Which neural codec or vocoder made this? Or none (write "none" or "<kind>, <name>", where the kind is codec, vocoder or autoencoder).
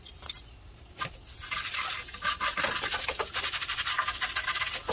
none